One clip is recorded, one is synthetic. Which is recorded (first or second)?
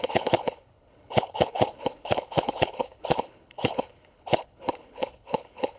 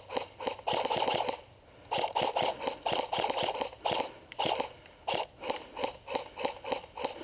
second